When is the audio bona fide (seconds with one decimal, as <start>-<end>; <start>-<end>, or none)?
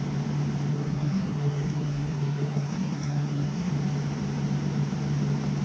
0.0-0.7; 3.7-5.6